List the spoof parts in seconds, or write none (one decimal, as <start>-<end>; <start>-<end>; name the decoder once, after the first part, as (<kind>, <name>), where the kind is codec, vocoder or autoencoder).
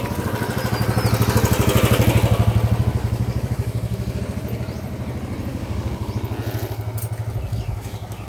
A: 3.0-4.2 (codec, DAC); 5.5-6.1; 7.5-8.3